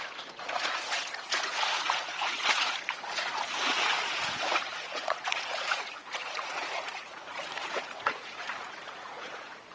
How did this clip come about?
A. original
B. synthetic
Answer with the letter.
B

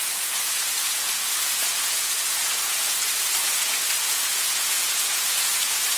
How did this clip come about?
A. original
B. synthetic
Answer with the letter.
B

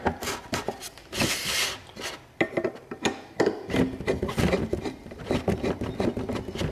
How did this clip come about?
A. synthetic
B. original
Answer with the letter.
B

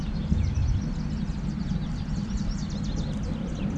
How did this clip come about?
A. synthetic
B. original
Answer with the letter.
B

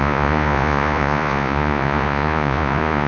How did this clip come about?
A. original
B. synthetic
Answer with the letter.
B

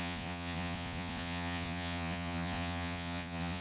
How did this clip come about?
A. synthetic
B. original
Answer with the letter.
A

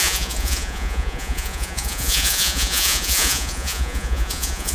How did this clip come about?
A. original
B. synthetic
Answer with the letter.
B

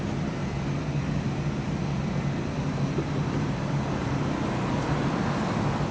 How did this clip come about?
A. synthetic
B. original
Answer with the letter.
B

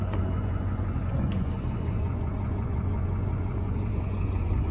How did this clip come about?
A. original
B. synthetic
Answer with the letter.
B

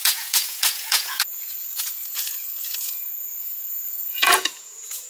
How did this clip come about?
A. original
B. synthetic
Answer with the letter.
B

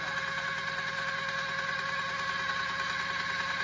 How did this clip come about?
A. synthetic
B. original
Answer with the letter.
B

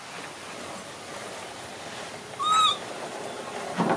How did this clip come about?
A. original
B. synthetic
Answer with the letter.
A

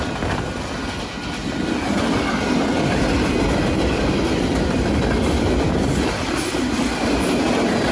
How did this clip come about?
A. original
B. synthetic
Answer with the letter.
A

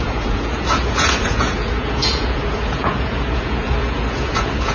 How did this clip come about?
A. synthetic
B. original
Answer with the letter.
A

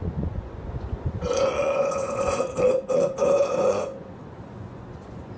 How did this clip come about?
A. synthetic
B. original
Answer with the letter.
A